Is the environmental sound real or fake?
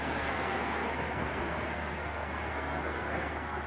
fake